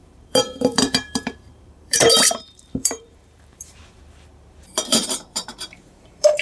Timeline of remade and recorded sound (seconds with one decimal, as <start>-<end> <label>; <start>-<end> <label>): 0.0-6.4 remade